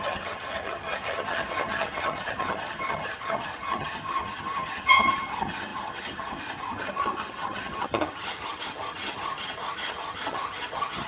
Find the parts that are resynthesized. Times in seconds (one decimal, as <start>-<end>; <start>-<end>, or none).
0.0-11.1